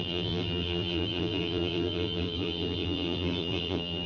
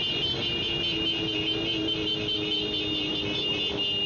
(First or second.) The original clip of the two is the second